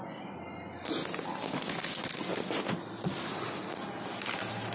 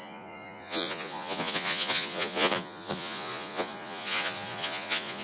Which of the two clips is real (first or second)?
first